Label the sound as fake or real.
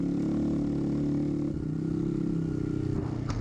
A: real